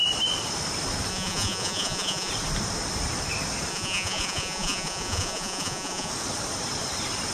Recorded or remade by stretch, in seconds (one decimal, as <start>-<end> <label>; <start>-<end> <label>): 0.0-1.1 recorded; 1.1-2.3 remade; 2.3-3.7 recorded; 3.7-6.1 remade; 6.1-7.3 recorded

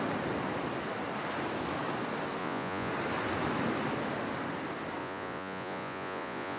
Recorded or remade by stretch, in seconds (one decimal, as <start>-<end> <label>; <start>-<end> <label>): 0.0-2.4 recorded; 2.4-2.9 remade; 2.9-5.0 recorded; 5.0-6.6 remade

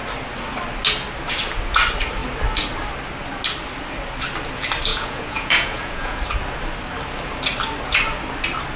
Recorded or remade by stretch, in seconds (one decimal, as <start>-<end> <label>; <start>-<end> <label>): 0.0-4.9 recorded; 4.9-6.2 remade; 6.2-8.8 recorded

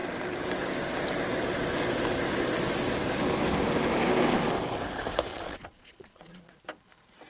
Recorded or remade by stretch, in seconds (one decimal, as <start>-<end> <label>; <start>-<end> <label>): 0.0-5.3 recorded; 5.3-6.6 remade; 6.6-7.3 recorded